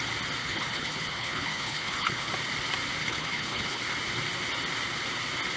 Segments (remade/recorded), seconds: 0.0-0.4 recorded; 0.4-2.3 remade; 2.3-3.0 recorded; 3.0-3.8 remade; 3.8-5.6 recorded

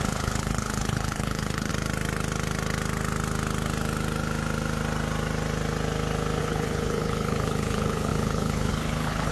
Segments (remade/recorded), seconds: 0.0-1.7 remade; 1.7-6.4 recorded; 6.4-9.3 remade